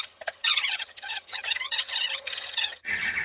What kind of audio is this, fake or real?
fake